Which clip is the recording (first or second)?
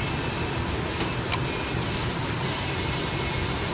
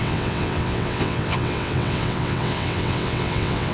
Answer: first